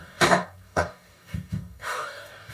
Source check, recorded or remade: remade